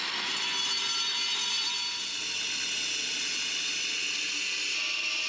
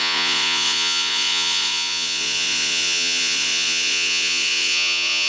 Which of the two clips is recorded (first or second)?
first